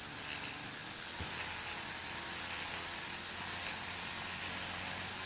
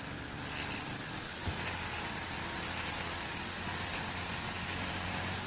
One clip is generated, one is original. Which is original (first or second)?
first